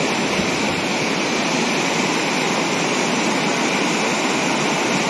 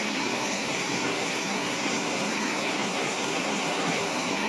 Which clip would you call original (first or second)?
first